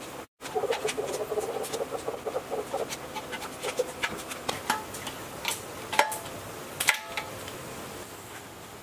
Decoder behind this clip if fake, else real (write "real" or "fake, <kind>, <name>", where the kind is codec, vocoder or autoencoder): real